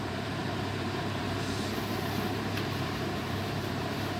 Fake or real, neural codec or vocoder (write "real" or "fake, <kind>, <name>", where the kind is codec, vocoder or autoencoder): fake, vocoder, BigVGAN v2